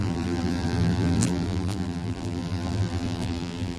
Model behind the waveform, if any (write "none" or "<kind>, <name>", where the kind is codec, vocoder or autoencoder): vocoder, BigVGAN v2